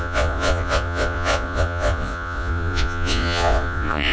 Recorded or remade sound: remade